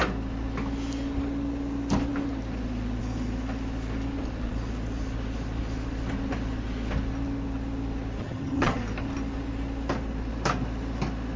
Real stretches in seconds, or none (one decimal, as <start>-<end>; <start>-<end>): 0.0-8.2; 8.8-11.4